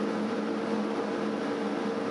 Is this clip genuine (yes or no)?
yes